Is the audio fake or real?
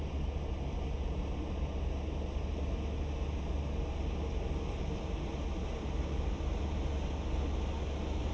real